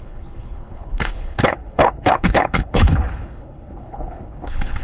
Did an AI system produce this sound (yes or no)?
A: yes